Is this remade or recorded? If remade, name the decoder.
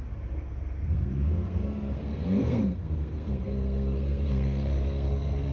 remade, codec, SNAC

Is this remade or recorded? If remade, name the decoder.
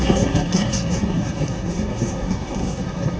remade, codec, SNAC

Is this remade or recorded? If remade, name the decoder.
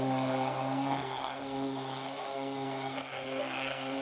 remade, codec, SNAC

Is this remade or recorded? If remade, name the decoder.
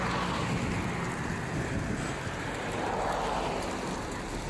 recorded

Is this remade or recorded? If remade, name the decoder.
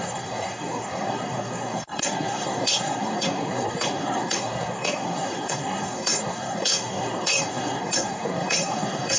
remade, codec, SNAC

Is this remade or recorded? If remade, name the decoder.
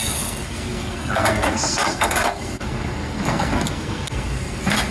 remade, codec, SNAC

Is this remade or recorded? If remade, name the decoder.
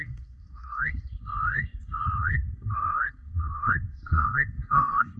remade, codec, SNAC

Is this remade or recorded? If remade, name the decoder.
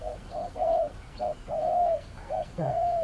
remade, codec, SNAC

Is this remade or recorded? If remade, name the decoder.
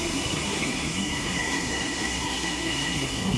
remade, codec, SNAC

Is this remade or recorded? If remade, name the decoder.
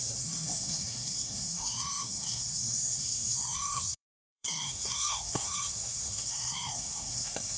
remade, codec, SNAC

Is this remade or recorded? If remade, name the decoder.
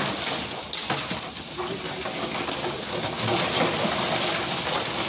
recorded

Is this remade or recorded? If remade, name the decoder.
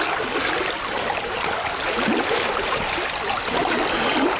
recorded